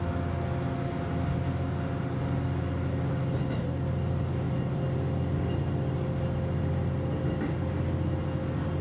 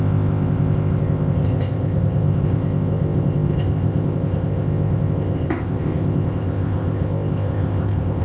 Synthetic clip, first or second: second